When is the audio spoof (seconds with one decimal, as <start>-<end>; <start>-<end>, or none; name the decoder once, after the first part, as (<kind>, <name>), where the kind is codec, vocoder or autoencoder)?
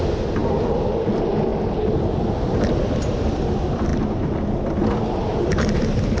none